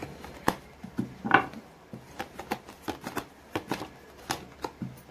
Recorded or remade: remade